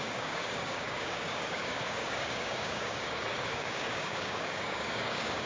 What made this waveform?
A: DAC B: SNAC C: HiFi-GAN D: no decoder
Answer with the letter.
A